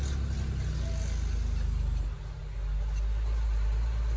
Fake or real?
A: real